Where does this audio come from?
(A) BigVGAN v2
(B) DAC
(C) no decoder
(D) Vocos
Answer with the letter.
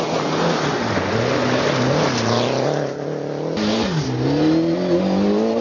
C